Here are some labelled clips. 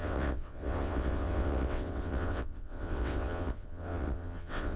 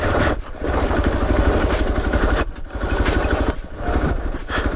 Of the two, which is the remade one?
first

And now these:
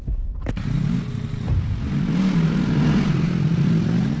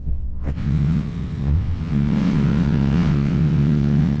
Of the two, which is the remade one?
second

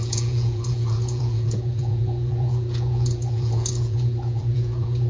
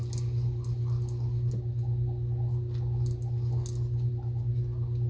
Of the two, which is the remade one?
first